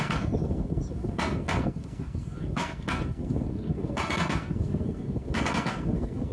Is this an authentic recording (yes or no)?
no